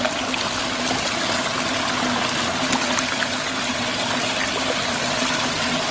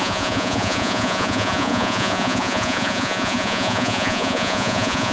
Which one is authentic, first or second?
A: first